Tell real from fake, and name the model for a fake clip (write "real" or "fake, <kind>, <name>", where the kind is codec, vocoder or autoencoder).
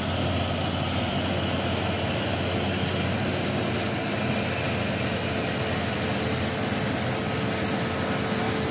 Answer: real